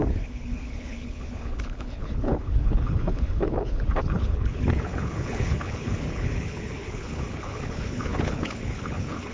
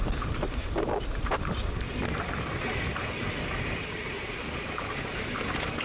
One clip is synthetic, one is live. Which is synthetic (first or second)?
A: first